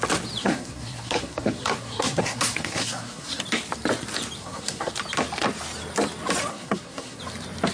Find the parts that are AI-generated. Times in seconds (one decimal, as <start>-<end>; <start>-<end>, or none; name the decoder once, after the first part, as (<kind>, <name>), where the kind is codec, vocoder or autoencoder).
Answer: 0.4-3.4 (codec, SNAC); 4.4-4.9; 6.5-7.2